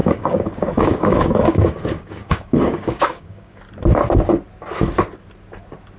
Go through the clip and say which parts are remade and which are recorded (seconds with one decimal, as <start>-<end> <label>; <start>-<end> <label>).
0.0-3.6 remade; 3.6-6.0 recorded